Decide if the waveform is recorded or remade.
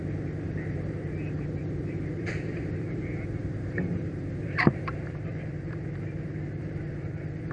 remade